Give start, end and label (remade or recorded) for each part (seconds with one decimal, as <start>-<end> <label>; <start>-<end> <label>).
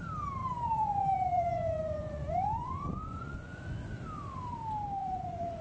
0.0-0.4 recorded; 0.4-3.8 remade; 3.8-5.0 recorded; 5.0-5.6 remade